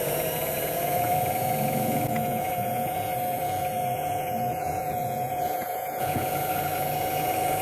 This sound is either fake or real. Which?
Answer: fake